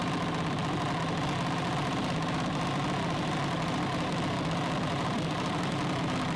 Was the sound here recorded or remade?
recorded